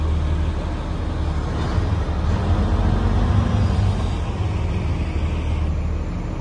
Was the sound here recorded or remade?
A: recorded